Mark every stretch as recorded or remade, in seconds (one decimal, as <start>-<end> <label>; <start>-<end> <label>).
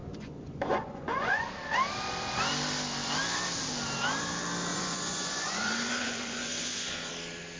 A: 0.0-1.5 remade; 1.5-4.7 recorded; 4.7-7.1 remade; 7.1-7.6 recorded